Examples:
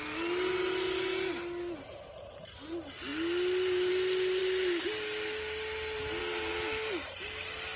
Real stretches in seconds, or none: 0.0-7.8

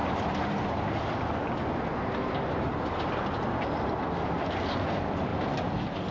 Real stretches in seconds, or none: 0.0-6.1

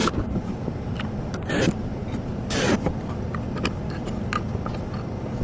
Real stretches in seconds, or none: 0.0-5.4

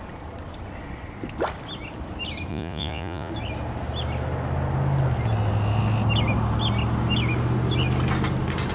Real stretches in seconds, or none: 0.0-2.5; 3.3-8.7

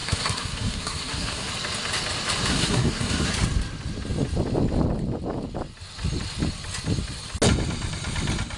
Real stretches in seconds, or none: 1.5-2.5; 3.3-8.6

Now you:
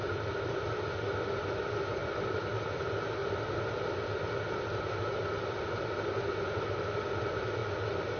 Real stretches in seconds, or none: 0.0-8.2

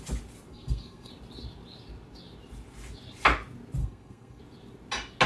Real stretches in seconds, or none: 0.0-0.5; 1.1-3.8; 4.4-5.3

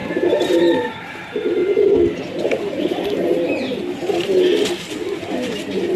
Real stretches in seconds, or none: 0.6-6.0